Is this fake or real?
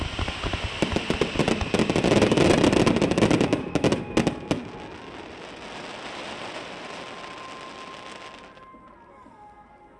real